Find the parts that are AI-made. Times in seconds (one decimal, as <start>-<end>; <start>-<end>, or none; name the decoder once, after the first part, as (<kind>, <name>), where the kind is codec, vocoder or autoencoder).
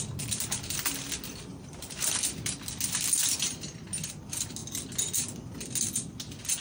none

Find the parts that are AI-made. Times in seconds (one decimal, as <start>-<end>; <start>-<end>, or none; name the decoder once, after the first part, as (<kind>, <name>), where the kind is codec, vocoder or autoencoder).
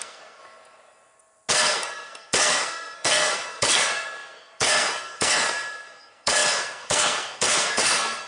0.0-0.4 (codec, SNAC); 1.5-8.3